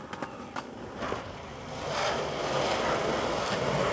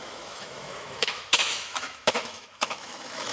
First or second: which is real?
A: first